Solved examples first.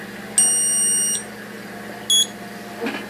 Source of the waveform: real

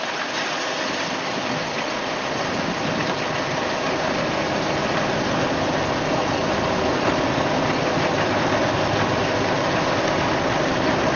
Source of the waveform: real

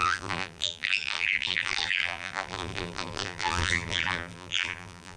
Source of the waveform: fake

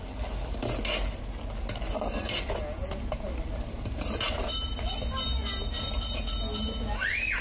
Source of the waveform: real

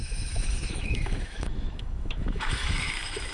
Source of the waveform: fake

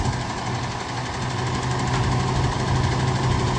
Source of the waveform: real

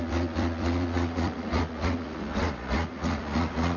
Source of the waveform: fake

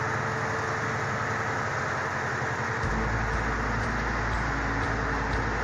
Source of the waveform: real